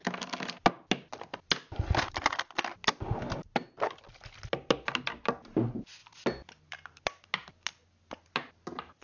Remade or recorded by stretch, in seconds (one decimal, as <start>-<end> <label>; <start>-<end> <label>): 0.0-9.0 recorded